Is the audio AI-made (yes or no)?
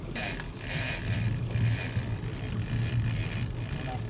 no